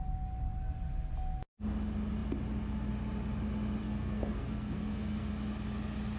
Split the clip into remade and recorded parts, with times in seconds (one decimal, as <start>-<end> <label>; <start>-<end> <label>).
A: 0.0-3.8 recorded; 3.8-5.3 remade; 5.3-6.2 recorded